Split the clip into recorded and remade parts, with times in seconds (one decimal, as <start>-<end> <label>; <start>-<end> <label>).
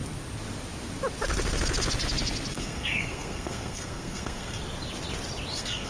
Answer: 0.0-2.5 recorded; 2.5-4.6 remade; 4.6-5.5 recorded; 5.5-5.9 remade